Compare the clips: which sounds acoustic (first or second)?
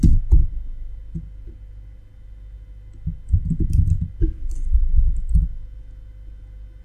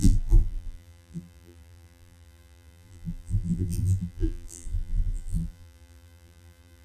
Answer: first